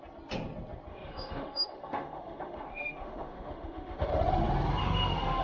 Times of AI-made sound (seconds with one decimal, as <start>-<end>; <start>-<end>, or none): 0.9-4.1; 4.8-5.4